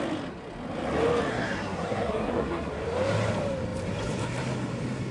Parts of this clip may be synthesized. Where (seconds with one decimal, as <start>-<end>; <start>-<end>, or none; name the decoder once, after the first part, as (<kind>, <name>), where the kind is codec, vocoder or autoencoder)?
1.3-2.7 (codec, SNAC)